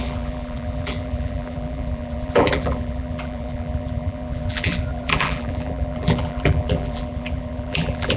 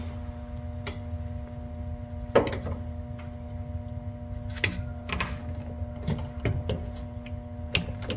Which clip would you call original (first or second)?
second